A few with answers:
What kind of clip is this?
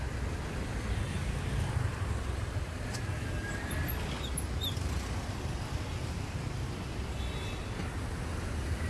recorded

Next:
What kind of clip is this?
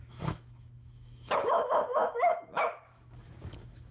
remade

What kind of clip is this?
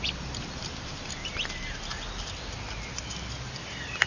recorded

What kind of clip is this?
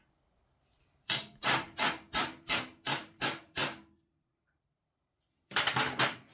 remade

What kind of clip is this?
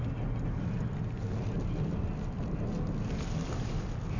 recorded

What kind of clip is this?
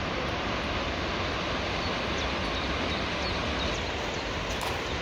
recorded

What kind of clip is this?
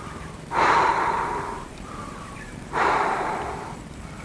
remade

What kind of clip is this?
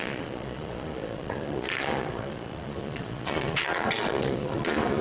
remade